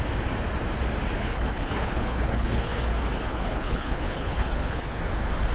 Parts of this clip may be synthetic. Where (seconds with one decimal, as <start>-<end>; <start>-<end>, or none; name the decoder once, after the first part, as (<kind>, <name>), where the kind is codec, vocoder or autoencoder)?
1.2-2.8 (codec, HILCodec); 3.3-5.0